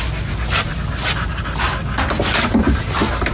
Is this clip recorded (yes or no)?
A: yes